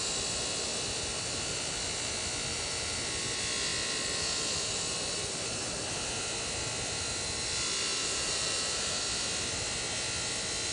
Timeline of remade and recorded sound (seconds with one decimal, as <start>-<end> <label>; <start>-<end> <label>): 0.0-2.5 recorded; 2.5-3.0 remade; 3.0-8.0 recorded; 8.0-9.0 remade; 9.0-10.7 recorded